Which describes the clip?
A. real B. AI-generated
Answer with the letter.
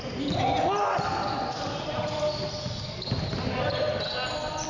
A